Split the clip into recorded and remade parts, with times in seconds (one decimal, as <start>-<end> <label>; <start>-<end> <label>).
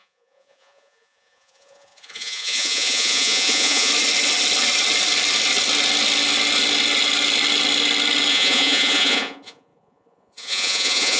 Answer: 0.0-3.9 remade; 3.9-8.3 recorded; 8.3-11.2 remade